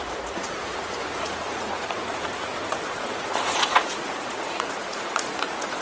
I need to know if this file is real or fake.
fake